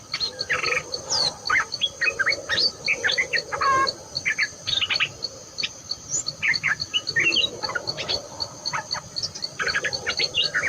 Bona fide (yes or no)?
yes